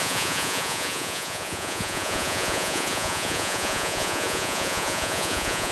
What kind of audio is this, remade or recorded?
remade